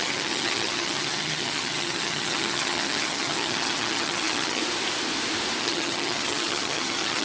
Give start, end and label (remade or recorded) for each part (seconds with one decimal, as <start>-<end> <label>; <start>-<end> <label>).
0.0-4.6 remade; 4.6-5.6 recorded; 5.6-7.2 remade